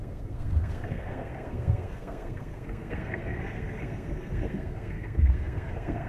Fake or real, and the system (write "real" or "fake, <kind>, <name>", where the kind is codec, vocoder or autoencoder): fake, codec, SNAC